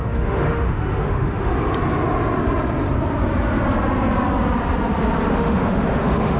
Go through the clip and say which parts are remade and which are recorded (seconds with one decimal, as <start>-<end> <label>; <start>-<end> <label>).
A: 0.0-1.5 remade; 1.5-5.3 recorded; 5.3-6.4 remade